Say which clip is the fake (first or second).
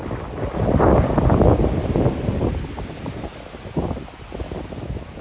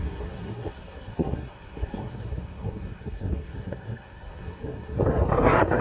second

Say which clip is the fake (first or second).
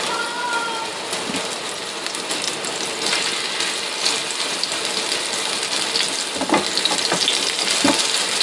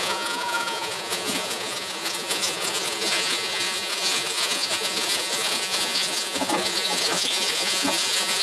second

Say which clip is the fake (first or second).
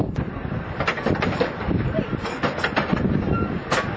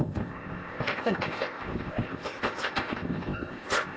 second